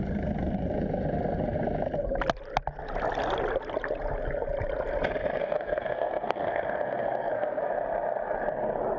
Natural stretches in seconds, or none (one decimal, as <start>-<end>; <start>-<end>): 0.0-5.4; 7.6-9.0